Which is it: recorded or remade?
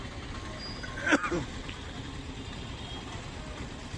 recorded